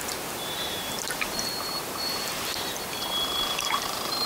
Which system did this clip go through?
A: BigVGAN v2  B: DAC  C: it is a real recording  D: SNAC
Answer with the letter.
A